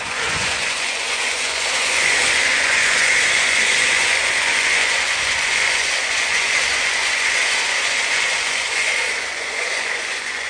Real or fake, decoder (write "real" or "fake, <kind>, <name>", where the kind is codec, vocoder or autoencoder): fake, vocoder, Vocos